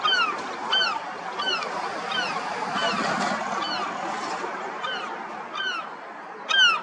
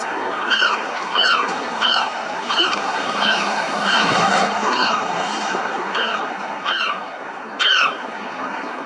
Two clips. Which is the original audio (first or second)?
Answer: first